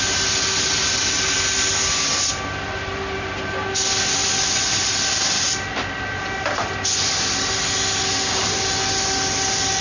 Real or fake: real